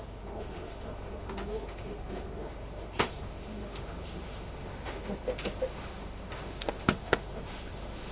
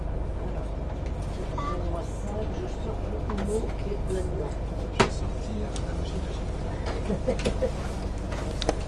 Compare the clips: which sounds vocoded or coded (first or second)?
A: first